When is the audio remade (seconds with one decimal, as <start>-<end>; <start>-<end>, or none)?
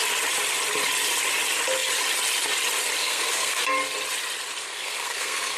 3.0-3.6; 4.6-5.6